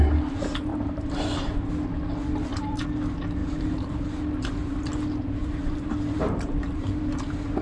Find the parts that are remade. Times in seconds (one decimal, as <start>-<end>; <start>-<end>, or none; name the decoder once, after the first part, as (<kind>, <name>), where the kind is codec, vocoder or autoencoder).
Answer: 0.7-1.7 (vocoder, BigVGAN v2); 3.4-4.0; 5.4-7.0